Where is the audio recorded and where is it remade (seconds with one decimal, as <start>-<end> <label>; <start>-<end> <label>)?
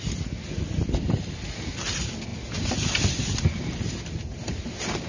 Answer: 0.0-5.1 recorded